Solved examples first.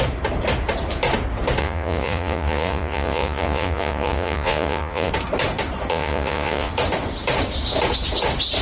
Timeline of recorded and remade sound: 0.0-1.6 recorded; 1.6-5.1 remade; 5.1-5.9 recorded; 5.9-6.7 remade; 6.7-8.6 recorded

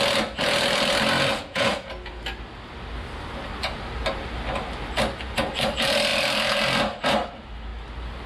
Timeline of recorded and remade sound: 0.0-1.3 recorded; 1.3-1.9 remade; 1.9-8.3 recorded

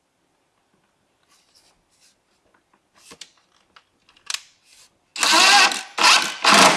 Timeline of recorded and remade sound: 0.0-6.8 recorded

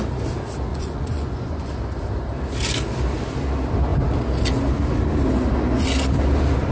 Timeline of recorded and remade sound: 0.0-0.7 recorded; 0.7-1.7 remade; 1.7-6.7 recorded